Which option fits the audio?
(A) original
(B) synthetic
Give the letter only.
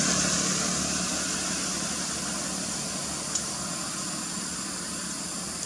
A